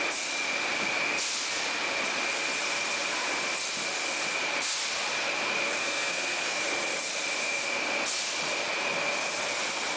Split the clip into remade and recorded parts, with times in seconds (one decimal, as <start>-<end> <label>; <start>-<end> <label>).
0.0-5.8 recorded; 5.8-6.6 remade; 6.6-10.0 recorded